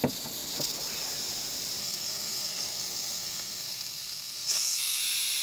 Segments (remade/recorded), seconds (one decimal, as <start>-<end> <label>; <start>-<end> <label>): 0.0-1.8 recorded; 1.8-5.0 remade; 5.0-5.4 recorded